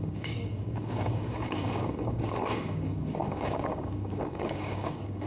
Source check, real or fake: fake